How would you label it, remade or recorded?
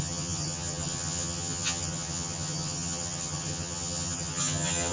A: remade